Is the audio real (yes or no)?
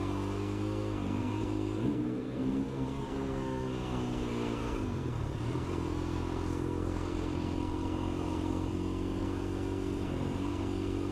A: no